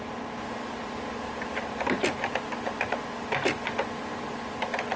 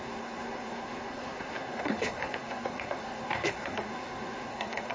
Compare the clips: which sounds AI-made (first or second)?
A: second